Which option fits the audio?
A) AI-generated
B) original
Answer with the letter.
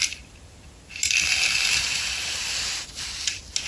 B